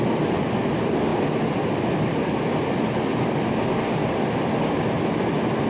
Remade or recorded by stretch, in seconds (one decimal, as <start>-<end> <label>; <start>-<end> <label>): 0.0-5.7 recorded